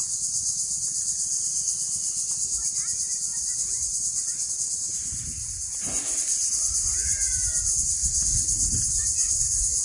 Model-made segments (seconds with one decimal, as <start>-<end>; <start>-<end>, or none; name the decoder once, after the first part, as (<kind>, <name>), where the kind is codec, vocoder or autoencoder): none